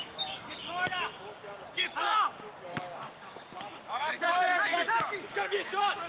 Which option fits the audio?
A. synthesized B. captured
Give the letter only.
A